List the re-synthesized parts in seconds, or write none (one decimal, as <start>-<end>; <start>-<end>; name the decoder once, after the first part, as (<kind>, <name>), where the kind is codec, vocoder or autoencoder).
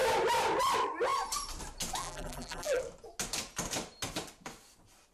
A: 2.0-2.8 (vocoder, BigVGAN v2)